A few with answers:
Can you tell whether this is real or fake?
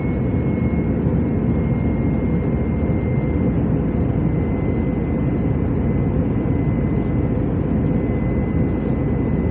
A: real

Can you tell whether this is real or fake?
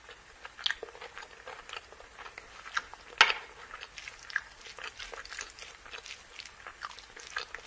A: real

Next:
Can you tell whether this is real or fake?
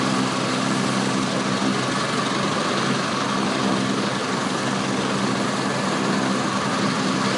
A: real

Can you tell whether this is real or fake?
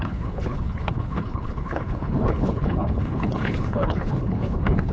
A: fake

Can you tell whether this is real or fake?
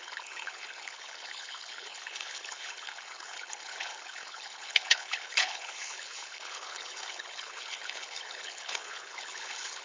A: fake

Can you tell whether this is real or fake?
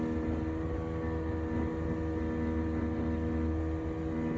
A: real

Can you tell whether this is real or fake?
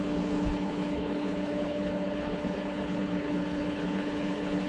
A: fake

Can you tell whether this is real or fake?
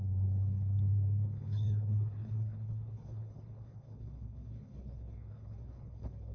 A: fake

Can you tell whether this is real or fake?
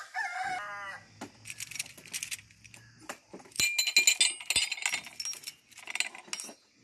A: real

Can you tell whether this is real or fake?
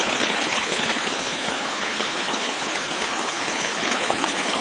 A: fake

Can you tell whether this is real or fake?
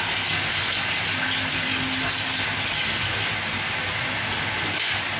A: real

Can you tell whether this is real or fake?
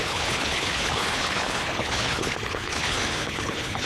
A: fake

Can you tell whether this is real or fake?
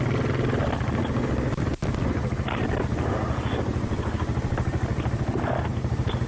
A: real